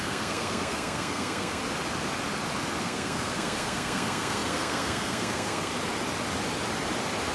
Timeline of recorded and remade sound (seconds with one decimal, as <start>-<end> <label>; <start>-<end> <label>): 0.0-1.6 remade; 1.6-2.8 recorded; 2.8-5.7 remade; 5.7-7.3 recorded